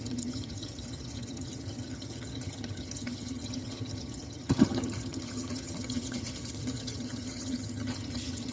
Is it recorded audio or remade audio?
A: remade